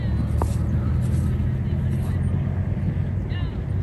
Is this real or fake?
real